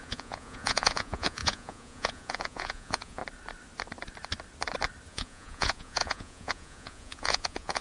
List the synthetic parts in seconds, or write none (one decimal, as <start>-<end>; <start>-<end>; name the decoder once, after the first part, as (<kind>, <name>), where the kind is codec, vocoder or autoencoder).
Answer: 0.0-3.2 (vocoder, Vocos); 5.1-7.8